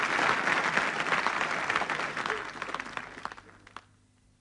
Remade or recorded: recorded